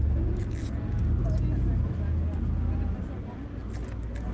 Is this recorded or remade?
recorded